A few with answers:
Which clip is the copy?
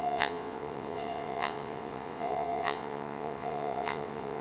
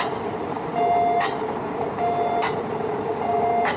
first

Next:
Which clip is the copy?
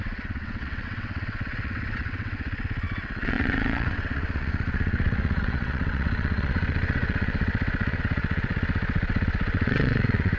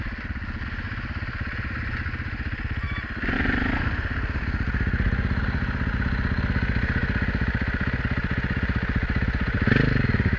first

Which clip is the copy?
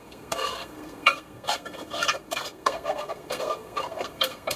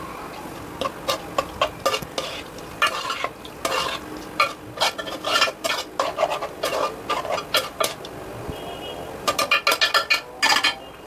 first